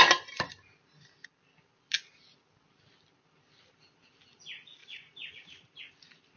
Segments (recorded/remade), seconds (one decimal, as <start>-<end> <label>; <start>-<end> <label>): 0.0-4.8 recorded; 4.8-5.8 remade; 5.8-6.4 recorded